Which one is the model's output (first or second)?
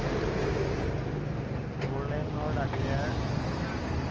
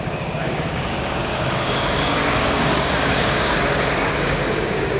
second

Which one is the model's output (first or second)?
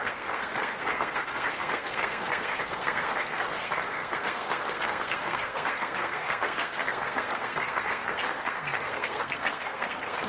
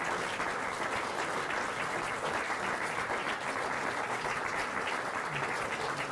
first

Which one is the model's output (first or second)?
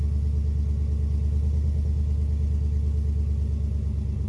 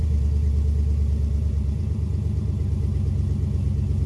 second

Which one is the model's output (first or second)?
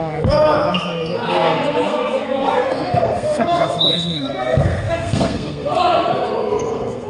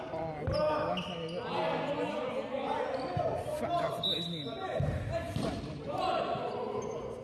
first